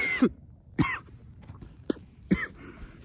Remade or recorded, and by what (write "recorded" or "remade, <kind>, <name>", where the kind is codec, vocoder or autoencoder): recorded